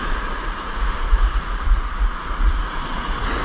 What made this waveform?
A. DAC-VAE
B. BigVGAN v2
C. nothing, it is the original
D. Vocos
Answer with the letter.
D